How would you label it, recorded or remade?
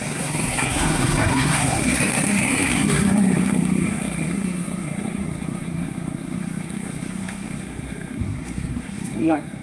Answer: remade